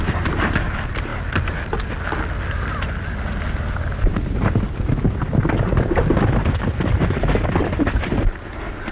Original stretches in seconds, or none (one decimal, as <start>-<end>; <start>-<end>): 0.0-8.9